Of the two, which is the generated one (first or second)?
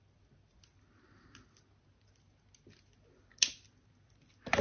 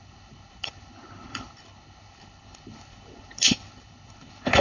second